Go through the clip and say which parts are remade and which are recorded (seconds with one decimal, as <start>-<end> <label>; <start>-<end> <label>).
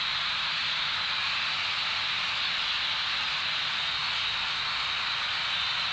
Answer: 0.0-5.9 recorded